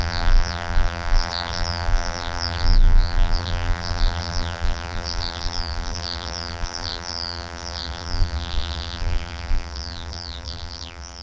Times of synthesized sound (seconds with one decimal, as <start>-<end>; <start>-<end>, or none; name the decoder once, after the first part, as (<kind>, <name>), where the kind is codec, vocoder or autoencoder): 0.0-11.2 (vocoder, BigVGAN v2)